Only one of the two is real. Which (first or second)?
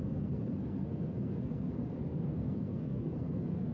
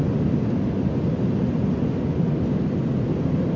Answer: second